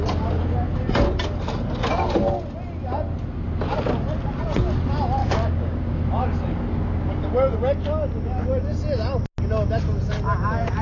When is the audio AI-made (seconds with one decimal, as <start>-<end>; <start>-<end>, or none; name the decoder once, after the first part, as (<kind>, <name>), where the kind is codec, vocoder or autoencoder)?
5.2-6.0 (codec, DAC)